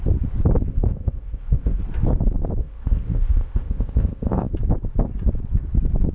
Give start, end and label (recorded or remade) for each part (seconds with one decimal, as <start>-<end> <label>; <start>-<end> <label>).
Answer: 0.0-0.7 recorded; 0.7-1.8 remade; 1.8-2.6 recorded; 2.6-4.5 remade; 4.5-6.1 recorded